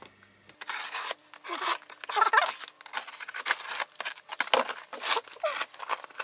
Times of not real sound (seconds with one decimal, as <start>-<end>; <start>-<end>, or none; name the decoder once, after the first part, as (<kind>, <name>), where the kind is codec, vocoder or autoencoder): 1.2-2.3 (vocoder, BigVGAN v2)